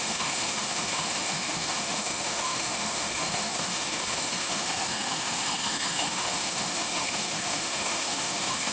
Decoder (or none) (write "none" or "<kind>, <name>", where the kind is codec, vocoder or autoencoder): autoencoder, DAC-VAE